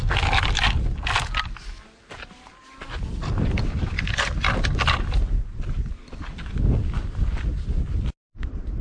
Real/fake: real